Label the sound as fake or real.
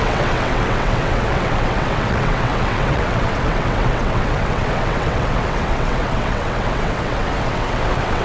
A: fake